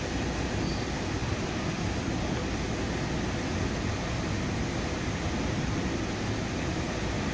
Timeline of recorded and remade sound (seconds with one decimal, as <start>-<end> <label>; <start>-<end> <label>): 0.0-7.3 recorded